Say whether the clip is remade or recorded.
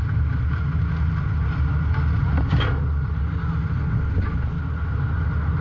recorded